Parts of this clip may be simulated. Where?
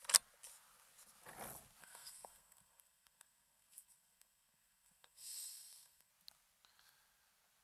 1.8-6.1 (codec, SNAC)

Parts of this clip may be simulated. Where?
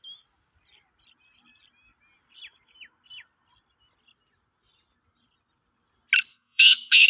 6.3-7.1 (codec, SNAC)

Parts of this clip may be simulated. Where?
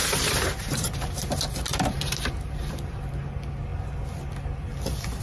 0.0-3.1 (vocoder, BigVGAN v2)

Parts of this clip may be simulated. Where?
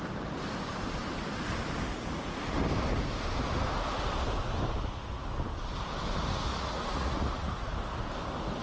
6.5-7.7 (vocoder, Vocos)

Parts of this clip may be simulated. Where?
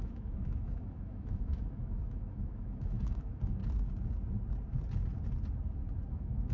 0.0-3.6 (autoencoder, DAC-VAE); 6.1-6.5